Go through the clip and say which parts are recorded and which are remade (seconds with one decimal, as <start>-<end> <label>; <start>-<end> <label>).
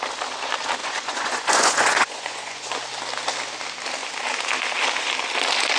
0.0-0.8 recorded; 0.8-2.7 remade; 2.7-5.8 recorded